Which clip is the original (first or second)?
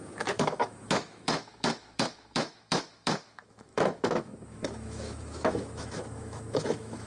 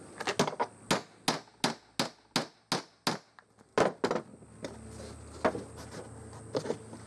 second